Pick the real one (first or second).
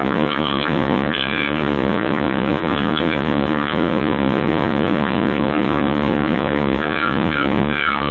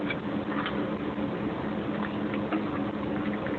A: second